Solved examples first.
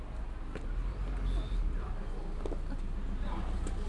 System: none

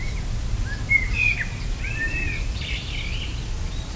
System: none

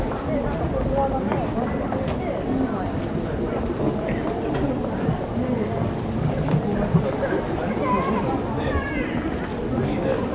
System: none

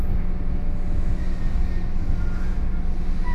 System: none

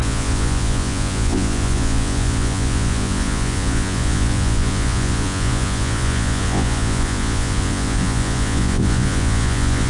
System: vocoder, Vocos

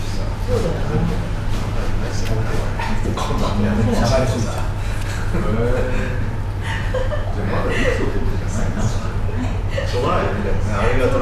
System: none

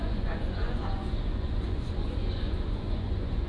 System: vocoder, Vocos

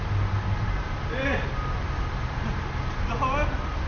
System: none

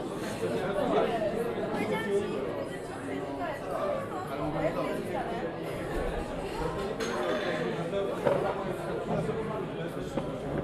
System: none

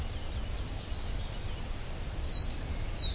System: none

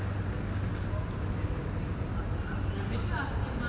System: none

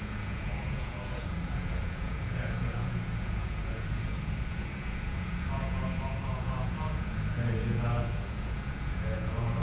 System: vocoder, Vocos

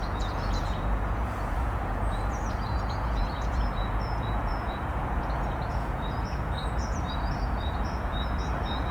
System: vocoder, Vocos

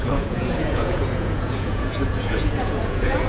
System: vocoder, Vocos